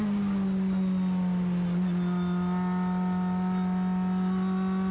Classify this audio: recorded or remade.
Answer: recorded